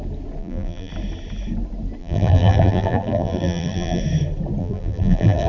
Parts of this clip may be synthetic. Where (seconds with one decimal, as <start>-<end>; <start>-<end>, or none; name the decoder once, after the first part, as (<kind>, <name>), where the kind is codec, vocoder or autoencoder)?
0.4-0.9 (vocoder, BigVGAN v2); 2.0-4.0; 4.6-5.5